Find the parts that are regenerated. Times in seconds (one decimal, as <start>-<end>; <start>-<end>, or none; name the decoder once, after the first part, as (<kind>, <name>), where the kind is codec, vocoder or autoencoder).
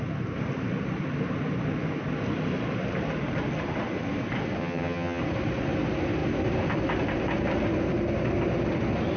4.6-5.2 (vocoder, HiFi-GAN)